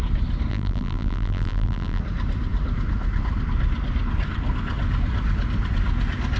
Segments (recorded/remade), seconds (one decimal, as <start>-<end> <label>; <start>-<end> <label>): 0.0-0.5 recorded; 0.5-2.0 remade; 2.0-6.4 recorded